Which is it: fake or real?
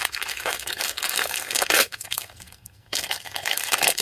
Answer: fake